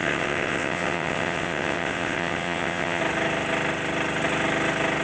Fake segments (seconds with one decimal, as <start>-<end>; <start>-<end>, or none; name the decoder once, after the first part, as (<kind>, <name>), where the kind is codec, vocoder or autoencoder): 0.0-3.0 (vocoder, WaveNeXt)